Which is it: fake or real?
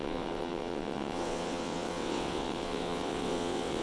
fake